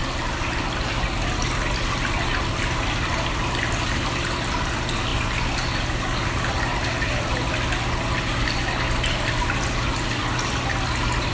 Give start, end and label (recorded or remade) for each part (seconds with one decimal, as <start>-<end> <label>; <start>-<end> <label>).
0.0-11.3 recorded